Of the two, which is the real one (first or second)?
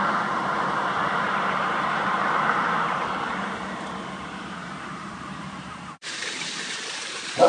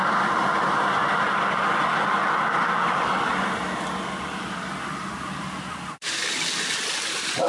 second